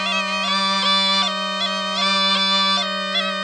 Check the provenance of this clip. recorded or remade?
recorded